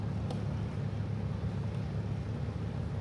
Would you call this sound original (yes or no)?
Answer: yes